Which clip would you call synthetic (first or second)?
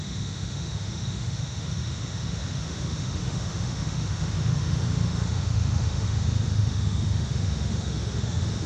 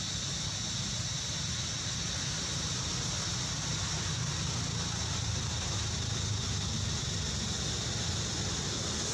first